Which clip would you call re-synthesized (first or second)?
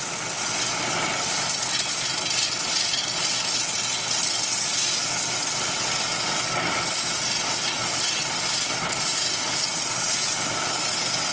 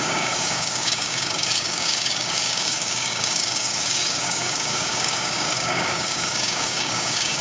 second